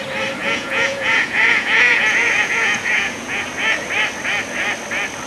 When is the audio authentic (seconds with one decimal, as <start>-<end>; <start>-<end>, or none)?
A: 0.0-0.4; 3.4-5.3